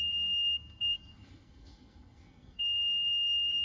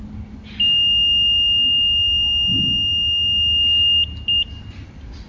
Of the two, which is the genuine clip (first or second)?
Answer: second